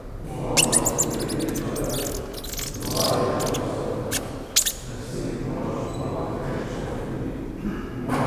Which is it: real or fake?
real